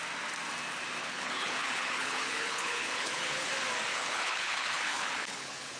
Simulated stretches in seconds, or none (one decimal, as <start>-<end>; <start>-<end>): 1.0-3.5; 3.9-5.8